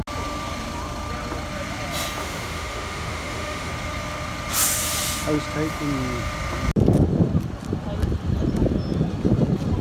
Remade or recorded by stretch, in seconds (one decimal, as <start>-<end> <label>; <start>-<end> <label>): 0.0-2.2 recorded; 2.2-3.7 remade; 3.7-9.8 recorded